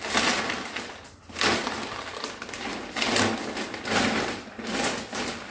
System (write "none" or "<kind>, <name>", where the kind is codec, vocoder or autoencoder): none